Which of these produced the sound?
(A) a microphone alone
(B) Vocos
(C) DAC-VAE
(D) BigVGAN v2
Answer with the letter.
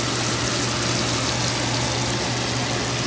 A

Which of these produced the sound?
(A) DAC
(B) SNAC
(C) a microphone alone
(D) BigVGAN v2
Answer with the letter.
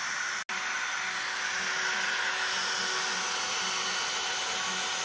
C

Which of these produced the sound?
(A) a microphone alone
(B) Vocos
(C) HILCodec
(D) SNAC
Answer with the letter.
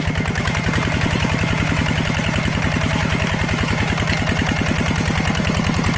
A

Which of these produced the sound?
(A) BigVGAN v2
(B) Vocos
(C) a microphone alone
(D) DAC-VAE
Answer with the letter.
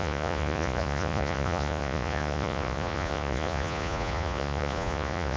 B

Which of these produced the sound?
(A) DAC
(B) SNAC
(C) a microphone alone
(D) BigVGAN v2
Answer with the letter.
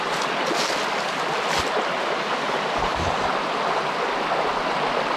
C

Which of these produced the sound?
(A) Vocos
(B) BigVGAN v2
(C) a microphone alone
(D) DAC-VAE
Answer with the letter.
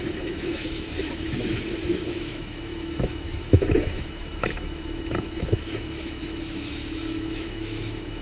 D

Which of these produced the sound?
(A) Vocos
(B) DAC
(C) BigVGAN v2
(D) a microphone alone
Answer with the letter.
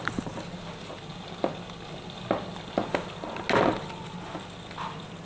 D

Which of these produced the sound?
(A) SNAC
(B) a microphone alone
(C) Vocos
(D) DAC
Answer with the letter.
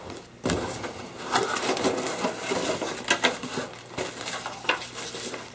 B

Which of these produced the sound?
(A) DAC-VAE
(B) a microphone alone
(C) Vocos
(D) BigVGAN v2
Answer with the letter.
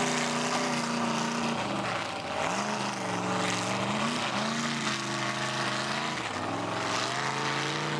B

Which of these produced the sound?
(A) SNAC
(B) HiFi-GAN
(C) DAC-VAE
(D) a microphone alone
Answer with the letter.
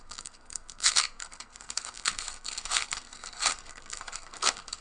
A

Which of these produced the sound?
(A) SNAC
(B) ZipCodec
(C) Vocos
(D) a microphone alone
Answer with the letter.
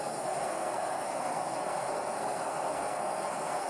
A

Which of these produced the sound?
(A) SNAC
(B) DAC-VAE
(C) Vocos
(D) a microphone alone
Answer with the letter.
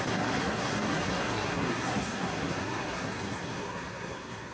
A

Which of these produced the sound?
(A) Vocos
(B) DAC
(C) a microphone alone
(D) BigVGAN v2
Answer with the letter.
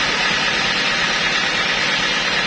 C